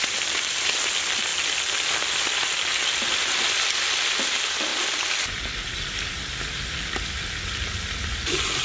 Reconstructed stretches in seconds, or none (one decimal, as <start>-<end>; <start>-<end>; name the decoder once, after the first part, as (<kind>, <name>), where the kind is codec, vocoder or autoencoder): none